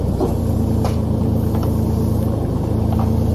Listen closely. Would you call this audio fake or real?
real